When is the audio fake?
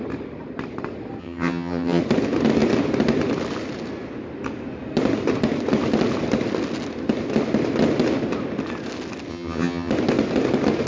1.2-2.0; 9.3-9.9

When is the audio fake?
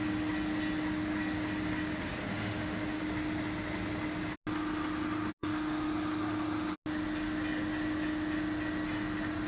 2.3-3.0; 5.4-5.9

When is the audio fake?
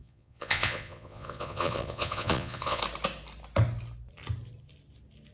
0.0-2.8